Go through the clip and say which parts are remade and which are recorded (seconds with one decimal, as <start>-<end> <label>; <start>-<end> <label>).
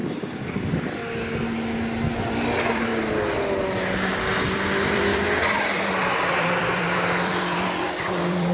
0.0-2.1 recorded; 2.1-2.9 remade; 2.9-4.5 recorded; 4.5-8.5 remade